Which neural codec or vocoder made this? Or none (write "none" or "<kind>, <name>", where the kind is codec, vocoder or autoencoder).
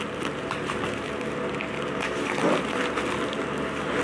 none